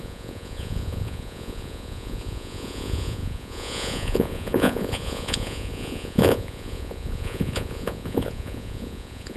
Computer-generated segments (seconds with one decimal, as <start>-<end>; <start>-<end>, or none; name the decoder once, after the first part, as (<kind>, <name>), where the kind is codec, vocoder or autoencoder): 0.0-9.4 (vocoder, Vocos)